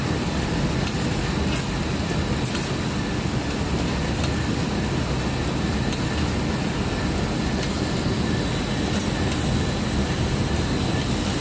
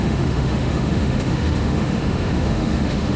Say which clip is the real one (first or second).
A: first